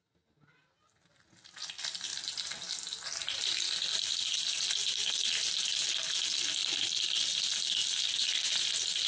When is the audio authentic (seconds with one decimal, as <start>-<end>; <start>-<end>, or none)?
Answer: 0.0-9.1